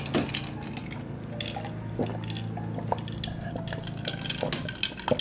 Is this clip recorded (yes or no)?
yes